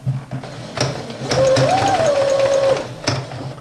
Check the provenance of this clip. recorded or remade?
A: recorded